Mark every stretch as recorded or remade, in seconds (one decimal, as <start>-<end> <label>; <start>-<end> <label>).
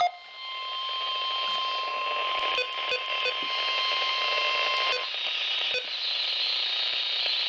0.0-7.5 recorded